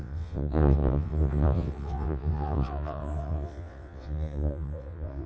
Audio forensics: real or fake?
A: fake